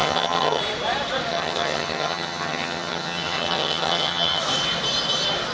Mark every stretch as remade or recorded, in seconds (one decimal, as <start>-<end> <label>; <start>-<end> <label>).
0.0-0.6 remade; 0.6-1.3 recorded; 1.3-4.4 remade; 4.4-5.5 recorded